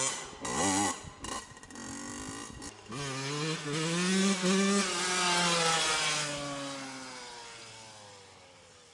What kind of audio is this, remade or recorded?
recorded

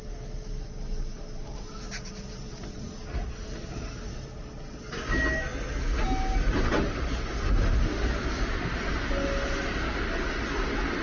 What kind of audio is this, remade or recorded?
recorded